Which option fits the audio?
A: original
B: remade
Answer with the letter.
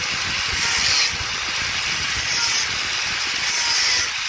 A